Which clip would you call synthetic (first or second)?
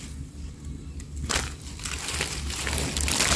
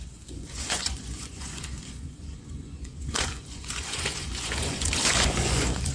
second